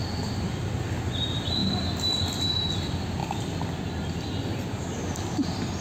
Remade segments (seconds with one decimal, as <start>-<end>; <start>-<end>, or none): none